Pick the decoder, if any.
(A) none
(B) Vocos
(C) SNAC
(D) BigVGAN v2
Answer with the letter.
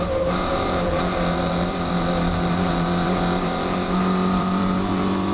D